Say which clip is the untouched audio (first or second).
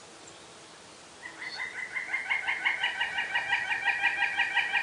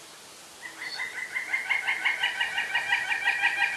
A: first